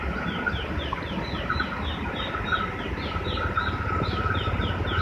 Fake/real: real